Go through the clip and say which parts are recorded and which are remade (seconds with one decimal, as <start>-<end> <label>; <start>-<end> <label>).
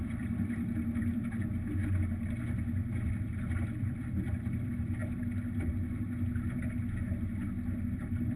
0.0-1.4 remade; 1.4-3.1 recorded; 3.1-5.0 remade; 5.0-7.9 recorded; 7.9-8.4 remade